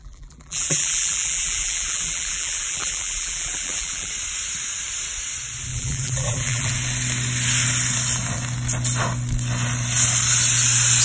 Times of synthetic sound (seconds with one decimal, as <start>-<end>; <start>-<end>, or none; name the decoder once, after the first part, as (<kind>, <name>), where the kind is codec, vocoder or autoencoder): 0.0-4.1 (vocoder, BigVGAN v2); 5.7-6.7